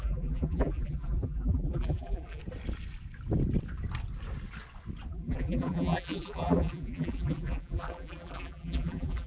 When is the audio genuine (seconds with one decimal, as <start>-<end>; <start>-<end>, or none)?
2.4-5.1